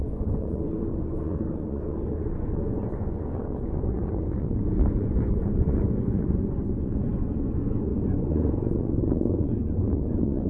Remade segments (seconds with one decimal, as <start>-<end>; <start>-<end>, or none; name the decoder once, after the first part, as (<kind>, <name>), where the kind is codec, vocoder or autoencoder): 0.0-10.5 (vocoder, Vocos)

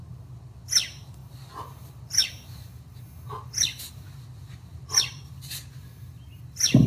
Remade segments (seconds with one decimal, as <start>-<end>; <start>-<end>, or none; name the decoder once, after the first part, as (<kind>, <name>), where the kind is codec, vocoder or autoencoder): none